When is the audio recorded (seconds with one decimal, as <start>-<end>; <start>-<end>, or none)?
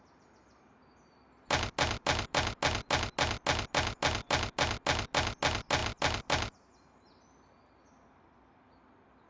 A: 0.0-9.3